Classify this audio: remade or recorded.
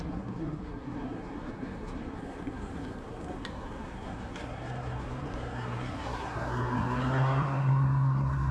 remade